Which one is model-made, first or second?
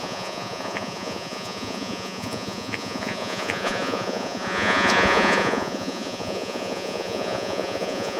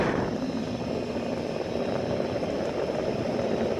first